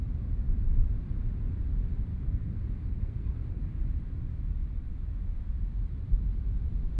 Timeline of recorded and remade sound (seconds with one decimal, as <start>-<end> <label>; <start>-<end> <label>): 0.0-2.1 recorded; 2.1-3.6 remade; 3.6-7.0 recorded